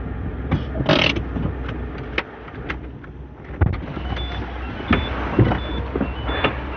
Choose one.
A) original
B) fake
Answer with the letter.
A